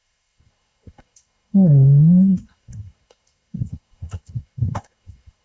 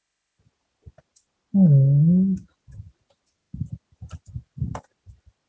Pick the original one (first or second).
second